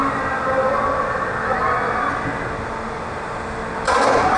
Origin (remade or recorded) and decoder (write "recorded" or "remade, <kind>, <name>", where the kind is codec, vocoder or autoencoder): recorded